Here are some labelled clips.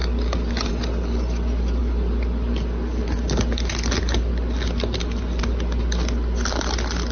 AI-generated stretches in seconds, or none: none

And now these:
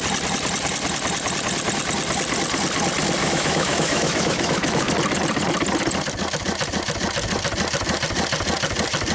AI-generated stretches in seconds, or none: 3.2-4.9 (autoencoder, DAC-VAE)

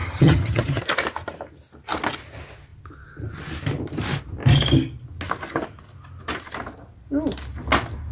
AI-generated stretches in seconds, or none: 0.0-0.8 (vocoder, HiFi-GAN)

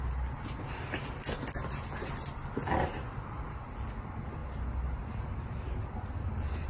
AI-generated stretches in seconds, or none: none

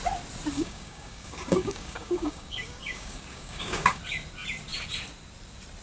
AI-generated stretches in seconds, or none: 0.5-4.0 (codec, DAC)